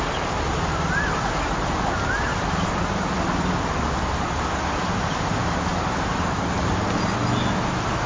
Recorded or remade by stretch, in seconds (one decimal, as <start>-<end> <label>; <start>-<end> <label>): 0.0-8.1 recorded